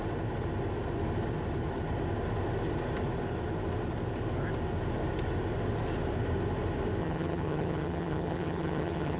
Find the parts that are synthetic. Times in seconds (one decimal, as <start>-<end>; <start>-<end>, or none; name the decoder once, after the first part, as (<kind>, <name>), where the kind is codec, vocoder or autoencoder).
7.0-9.2 (vocoder, HiFi-GAN)